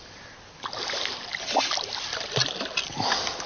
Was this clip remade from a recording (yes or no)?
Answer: no